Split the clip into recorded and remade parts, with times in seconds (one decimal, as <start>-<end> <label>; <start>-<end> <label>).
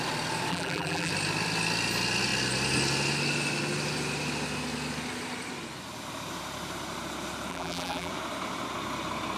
0.0-0.5 recorded; 0.5-1.1 remade; 1.1-7.5 recorded; 7.5-8.1 remade; 8.1-9.4 recorded